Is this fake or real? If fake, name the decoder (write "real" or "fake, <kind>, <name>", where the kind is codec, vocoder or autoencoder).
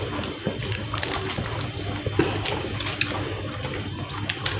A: fake, vocoder, BigVGAN v2